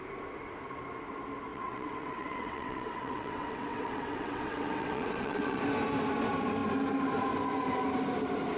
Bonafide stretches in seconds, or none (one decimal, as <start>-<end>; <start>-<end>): 0.0-1.5; 5.6-8.6